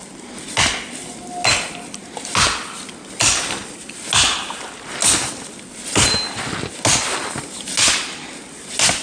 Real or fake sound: real